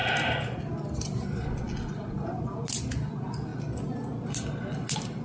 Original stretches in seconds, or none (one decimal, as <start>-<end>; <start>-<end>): 0.0-5.2